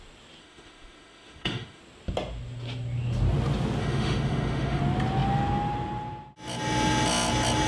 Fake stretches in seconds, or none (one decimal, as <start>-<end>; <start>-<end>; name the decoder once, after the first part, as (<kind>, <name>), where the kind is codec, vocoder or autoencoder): 0.4-1.8 (autoencoder, DAC-VAE); 3.8-4.8